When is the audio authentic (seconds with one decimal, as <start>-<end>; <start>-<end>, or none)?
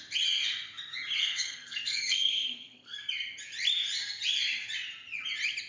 0.0-1.2; 3.0-5.7